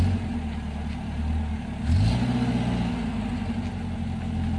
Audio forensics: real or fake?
real